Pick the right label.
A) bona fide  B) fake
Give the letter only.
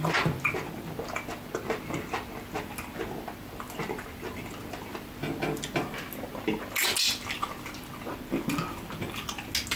A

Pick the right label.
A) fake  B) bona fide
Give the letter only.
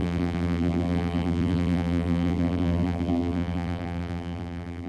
A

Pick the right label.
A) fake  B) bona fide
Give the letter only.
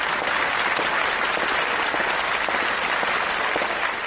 B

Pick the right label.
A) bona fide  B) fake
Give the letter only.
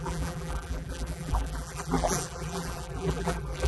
B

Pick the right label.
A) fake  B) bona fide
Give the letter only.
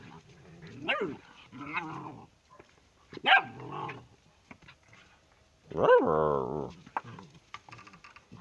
B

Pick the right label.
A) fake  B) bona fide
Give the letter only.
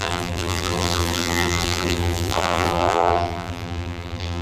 A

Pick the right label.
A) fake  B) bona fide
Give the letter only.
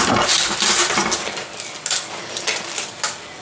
A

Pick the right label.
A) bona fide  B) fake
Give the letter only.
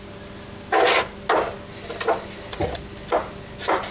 A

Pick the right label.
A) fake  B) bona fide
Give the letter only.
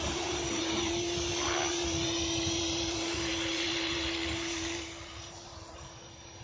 A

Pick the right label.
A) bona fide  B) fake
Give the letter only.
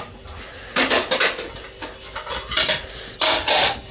A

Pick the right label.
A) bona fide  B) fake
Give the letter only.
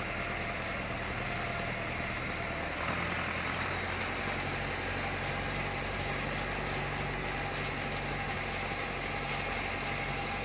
A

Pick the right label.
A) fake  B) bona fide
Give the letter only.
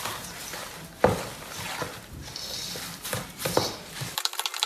A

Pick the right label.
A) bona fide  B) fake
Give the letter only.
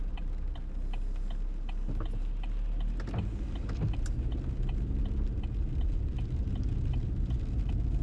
A